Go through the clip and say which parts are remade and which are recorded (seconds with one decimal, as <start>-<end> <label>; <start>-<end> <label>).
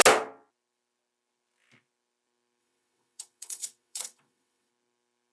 0.0-2.6 recorded; 2.6-4.7 remade; 4.7-5.3 recorded